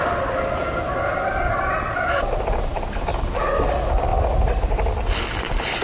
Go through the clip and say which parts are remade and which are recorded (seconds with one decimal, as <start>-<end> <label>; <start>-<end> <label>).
0.0-1.1 recorded; 1.1-3.5 remade; 3.5-5.8 recorded